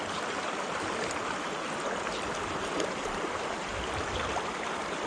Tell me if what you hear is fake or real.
real